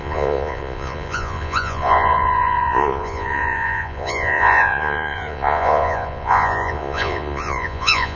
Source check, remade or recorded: remade